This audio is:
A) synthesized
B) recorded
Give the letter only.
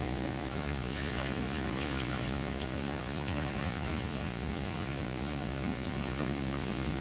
A